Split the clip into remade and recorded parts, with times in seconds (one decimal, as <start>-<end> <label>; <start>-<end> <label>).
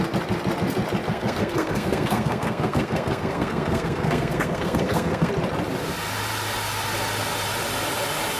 0.0-1.1 recorded; 1.1-5.3 remade; 5.3-8.4 recorded